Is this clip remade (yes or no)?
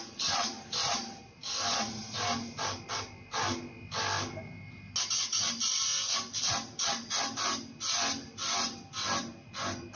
no